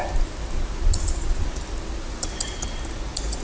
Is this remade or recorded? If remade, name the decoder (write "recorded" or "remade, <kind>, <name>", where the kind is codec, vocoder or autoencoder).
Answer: recorded